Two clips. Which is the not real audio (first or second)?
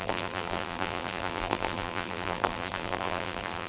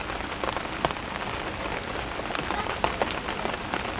first